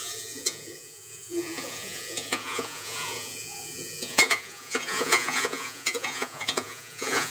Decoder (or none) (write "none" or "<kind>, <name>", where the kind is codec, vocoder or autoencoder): vocoder, Vocos